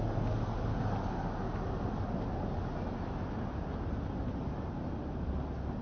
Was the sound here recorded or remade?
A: recorded